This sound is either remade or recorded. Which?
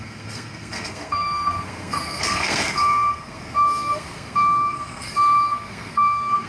remade